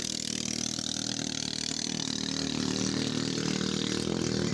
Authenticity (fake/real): fake